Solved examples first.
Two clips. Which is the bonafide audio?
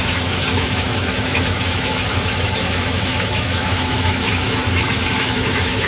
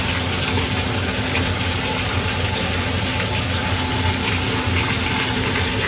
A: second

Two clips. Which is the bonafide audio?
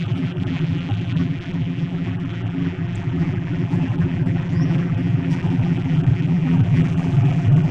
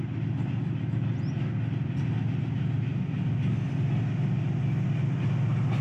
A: second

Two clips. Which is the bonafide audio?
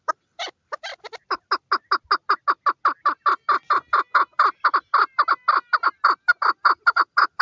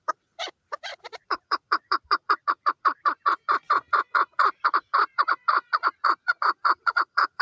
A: first